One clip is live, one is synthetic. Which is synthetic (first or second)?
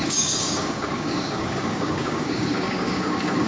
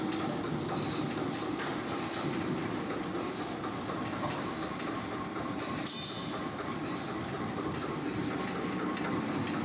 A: first